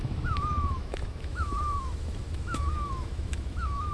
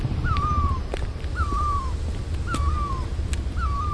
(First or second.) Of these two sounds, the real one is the second